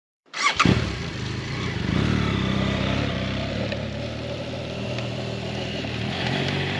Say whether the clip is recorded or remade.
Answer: remade